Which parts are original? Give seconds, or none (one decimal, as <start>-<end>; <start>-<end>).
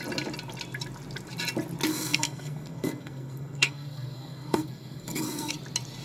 0.0-1.9; 5.5-6.0